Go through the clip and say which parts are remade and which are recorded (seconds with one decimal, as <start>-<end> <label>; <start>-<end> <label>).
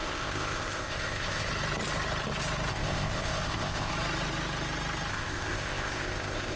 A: 0.0-1.5 remade; 1.5-2.7 recorded; 2.7-3.9 remade; 3.9-5.1 recorded; 5.1-6.6 remade